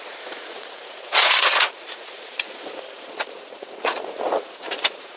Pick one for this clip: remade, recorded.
remade